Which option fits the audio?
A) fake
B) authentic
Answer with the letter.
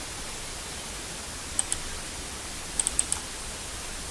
B